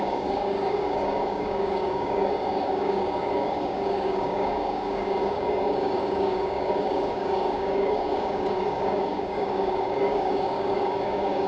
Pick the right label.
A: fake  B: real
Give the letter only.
A